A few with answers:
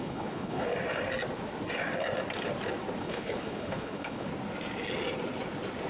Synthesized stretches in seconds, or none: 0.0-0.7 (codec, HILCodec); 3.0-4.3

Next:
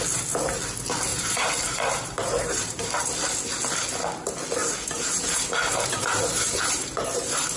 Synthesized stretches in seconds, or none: 1.1-2.9 (vocoder, BigVGAN v2); 4.6-7.1

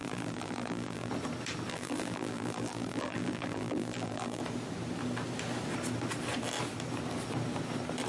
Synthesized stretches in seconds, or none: 0.0-1.1 (vocoder, BigVGAN v2); 1.7-4.4

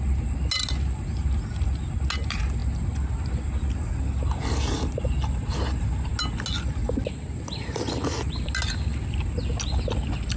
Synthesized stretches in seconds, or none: none

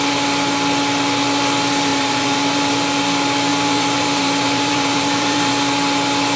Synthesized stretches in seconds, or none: 1.9-2.6 (vocoder, BigVGAN v2); 3.5-5.5

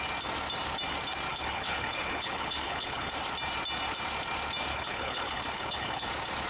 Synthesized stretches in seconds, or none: 1.3-3.1 (codec, HILCodec); 4.7-6.1

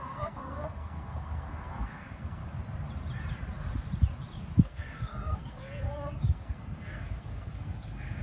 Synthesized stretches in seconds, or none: 0.0-2.4 (codec, SNAC); 4.6-8.2